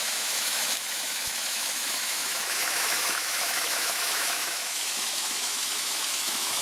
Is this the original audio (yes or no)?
no